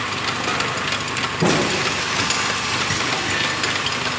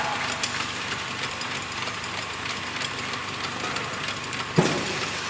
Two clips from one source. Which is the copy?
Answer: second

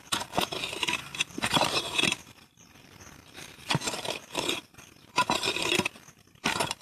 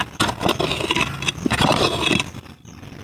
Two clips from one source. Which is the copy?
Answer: first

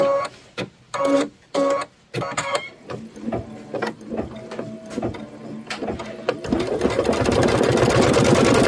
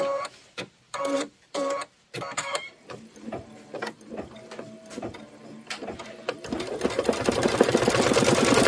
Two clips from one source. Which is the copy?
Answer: second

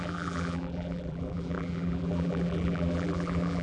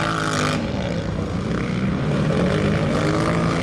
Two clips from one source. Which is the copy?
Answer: first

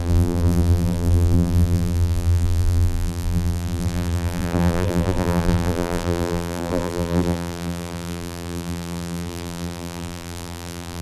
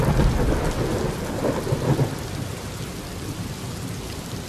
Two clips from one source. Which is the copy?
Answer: first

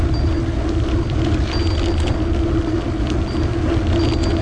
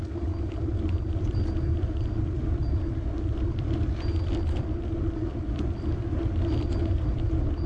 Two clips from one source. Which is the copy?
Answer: second